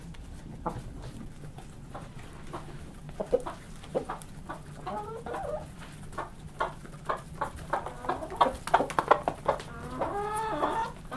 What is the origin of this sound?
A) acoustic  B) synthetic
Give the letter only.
A